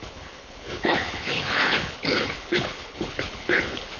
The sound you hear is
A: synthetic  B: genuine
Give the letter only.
A